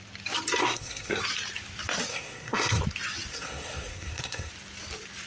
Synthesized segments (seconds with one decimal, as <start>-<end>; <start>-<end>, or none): 0.6-1.2; 2.1-2.8; 3.3-4.5

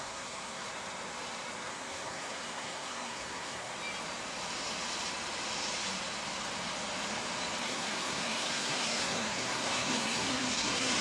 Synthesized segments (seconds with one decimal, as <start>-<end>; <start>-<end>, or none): 0.0-0.7; 1.7-3.7; 7.6-11.0

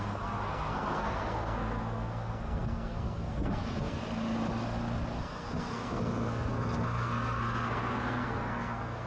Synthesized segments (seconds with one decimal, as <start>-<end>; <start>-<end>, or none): 0.0-4.0; 5.2-9.1

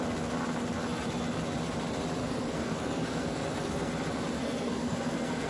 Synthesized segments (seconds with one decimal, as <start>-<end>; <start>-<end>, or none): 2.2-3.9; 4.4-5.5

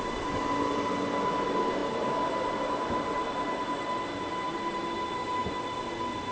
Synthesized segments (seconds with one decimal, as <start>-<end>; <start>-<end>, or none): none

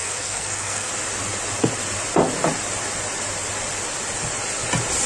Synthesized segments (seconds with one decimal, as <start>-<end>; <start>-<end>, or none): 0.0-0.9

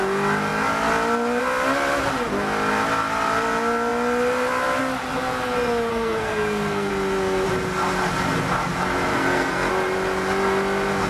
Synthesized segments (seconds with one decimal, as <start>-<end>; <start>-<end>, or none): 5.9-6.9; 9.1-9.7

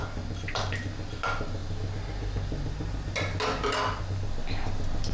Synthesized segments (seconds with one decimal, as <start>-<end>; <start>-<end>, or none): none